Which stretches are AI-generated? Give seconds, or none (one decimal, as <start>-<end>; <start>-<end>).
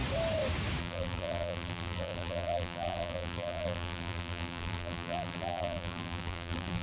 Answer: 0.8-6.8